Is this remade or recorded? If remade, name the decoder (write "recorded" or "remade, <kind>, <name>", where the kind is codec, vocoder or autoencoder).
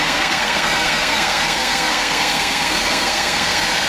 remade, codec, SNAC